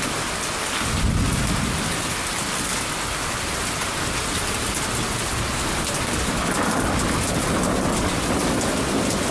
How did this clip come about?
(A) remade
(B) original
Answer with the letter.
B